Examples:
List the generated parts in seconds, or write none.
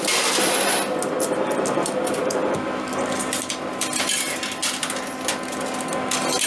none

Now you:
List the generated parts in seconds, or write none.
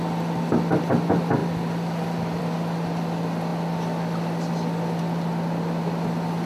1.4-2.4 (vocoder, BigVGAN v2)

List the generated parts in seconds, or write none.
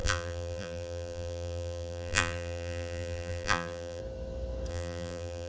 0.0-4.0 (vocoder, BigVGAN v2); 4.7-5.5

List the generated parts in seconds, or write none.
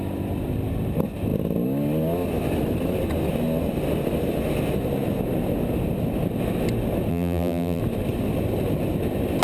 7.1-7.8 (vocoder, BigVGAN v2)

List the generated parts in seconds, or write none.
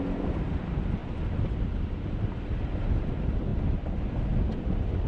none